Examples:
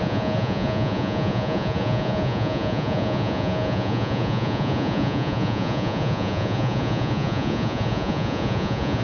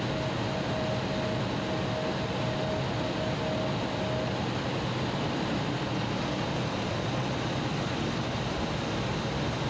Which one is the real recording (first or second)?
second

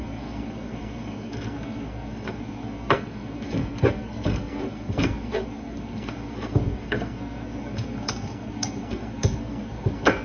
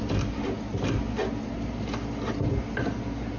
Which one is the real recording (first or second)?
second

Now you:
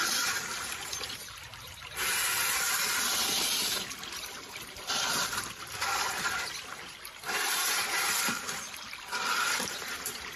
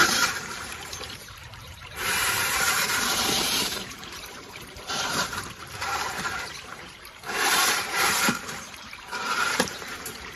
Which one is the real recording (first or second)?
first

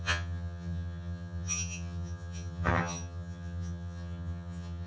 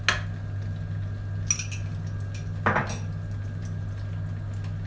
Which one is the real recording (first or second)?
second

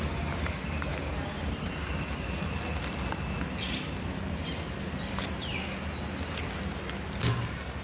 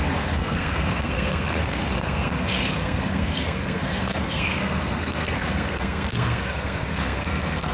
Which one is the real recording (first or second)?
first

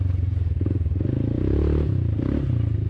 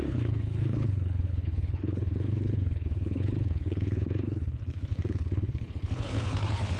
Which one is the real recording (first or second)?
first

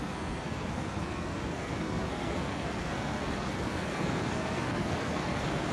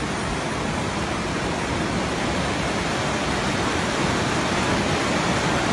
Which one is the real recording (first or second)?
second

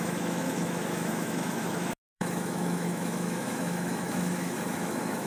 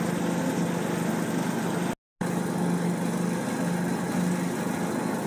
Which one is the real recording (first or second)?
second